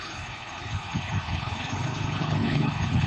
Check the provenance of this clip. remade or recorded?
remade